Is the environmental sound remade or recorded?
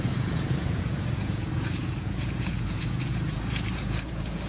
remade